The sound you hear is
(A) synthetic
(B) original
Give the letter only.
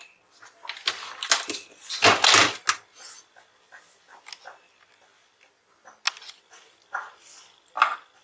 B